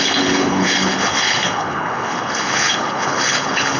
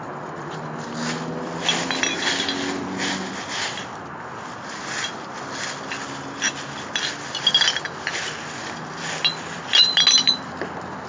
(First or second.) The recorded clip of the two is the second